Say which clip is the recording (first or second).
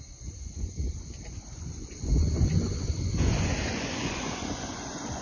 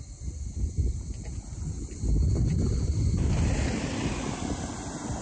second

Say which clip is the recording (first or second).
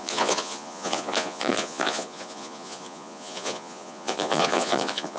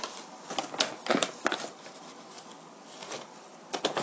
second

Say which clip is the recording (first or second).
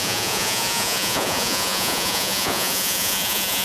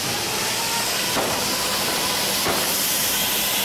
second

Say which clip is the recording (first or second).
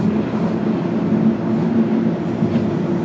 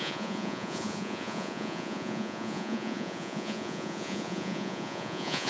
first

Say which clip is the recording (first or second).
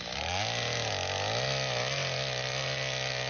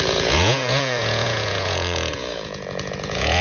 first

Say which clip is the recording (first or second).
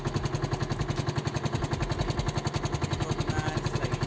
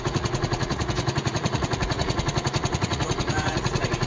first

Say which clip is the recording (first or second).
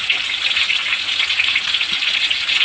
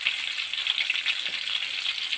second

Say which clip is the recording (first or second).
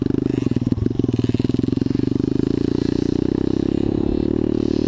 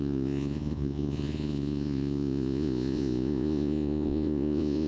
first